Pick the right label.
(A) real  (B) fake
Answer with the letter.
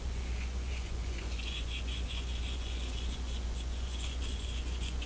B